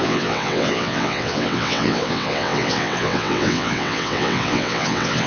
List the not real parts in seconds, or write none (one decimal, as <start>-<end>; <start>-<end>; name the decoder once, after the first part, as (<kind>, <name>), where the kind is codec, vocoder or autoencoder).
0.0-5.3 (vocoder, WaveNeXt)